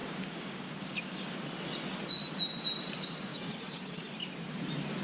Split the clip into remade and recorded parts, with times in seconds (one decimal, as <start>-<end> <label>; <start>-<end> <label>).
0.0-1.4 remade; 1.4-3.3 recorded; 3.3-4.1 remade; 4.1-5.0 recorded